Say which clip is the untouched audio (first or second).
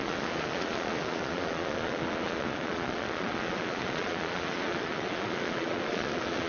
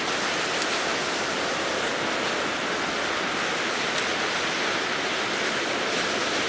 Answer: second